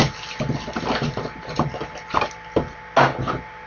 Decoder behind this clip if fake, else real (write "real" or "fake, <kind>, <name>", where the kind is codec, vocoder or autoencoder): real